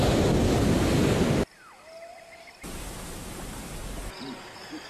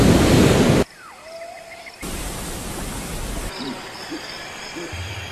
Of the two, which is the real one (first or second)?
first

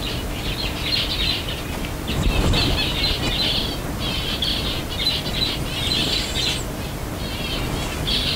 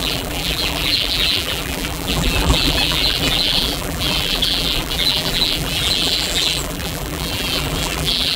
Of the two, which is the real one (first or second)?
first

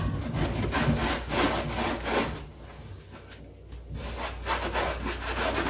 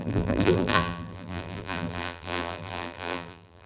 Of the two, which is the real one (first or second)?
first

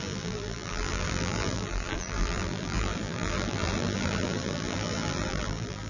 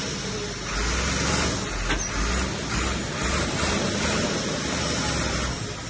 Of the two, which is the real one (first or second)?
second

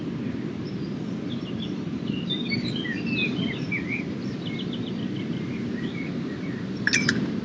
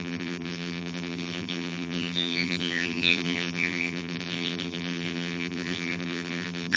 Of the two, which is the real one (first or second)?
first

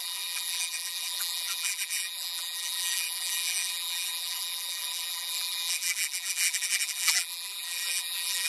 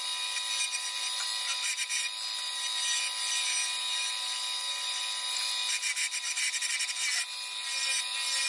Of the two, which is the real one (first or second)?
second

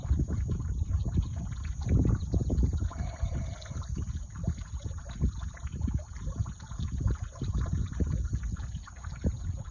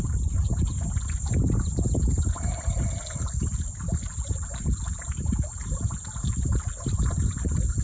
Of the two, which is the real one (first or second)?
second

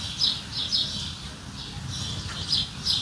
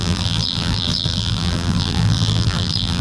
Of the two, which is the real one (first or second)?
first